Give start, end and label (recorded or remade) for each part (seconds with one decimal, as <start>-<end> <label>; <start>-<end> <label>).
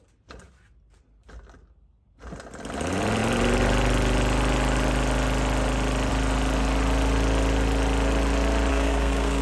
0.0-8.7 recorded; 8.7-9.4 remade